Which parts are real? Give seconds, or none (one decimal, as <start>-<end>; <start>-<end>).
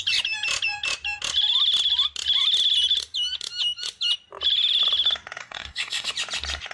0.0-5.4; 6.1-6.7